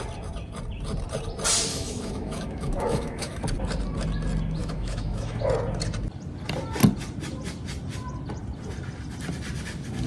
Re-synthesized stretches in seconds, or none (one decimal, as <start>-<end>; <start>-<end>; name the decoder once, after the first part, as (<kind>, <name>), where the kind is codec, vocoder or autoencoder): 1.7-3.4 (autoencoder, DAC-VAE); 4.6-5.4